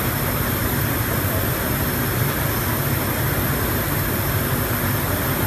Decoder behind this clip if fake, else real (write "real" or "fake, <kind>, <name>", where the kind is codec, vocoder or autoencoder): real